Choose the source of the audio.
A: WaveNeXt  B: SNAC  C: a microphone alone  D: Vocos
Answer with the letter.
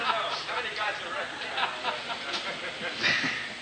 C